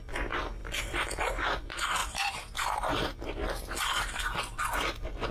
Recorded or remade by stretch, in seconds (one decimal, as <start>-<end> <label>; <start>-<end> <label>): 0.0-5.3 recorded